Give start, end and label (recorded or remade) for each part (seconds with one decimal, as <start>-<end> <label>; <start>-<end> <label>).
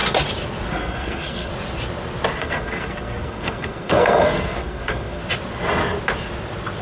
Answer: 0.0-0.7 recorded; 0.7-1.5 remade; 1.5-2.4 recorded; 2.4-5.2 remade; 5.2-6.8 recorded